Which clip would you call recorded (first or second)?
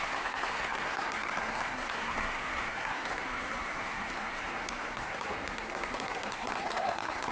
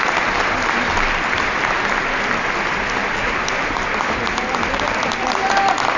second